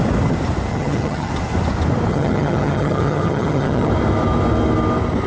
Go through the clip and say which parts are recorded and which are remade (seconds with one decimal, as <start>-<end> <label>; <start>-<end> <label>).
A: 0.0-0.7 recorded; 0.7-1.3 remade; 1.3-2.1 recorded; 2.1-3.9 remade; 3.9-5.3 recorded